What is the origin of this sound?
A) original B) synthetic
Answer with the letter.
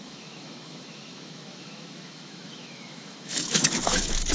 B